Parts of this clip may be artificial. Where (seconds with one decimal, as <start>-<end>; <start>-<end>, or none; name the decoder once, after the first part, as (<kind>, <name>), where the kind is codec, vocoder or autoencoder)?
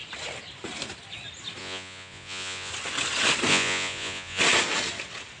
1.6-2.7 (vocoder, Vocos); 3.5-4.4